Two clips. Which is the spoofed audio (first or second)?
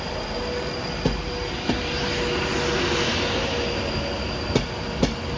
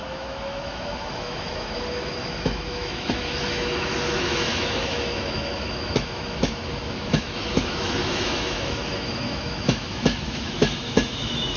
second